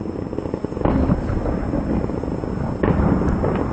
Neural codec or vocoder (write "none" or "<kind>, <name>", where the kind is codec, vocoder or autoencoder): none